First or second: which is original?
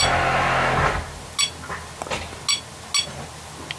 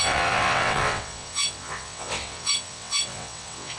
first